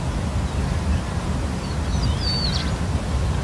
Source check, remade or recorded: recorded